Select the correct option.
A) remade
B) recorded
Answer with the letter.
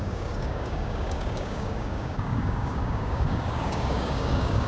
A